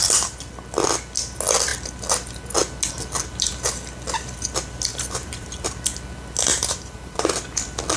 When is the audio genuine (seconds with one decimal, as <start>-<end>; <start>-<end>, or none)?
0.0-4.9; 5.7-6.5; 7.3-8.0